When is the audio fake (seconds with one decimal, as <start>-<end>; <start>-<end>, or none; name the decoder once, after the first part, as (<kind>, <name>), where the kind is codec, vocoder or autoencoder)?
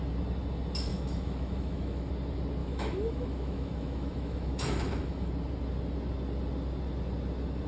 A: 0.9-2.1 (autoencoder, DAC-VAE); 2.6-5.3